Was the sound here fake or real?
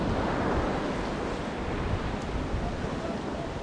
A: real